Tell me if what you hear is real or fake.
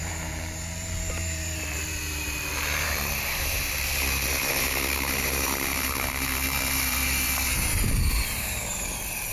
fake